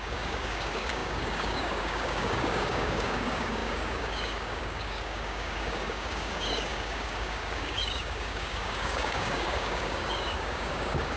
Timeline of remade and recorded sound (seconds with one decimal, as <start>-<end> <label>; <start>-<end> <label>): 0.0-11.2 remade